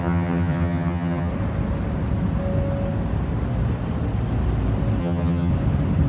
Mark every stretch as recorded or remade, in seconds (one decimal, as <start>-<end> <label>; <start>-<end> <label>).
0.0-1.3 remade; 1.3-5.0 recorded; 5.0-5.5 remade; 5.5-6.1 recorded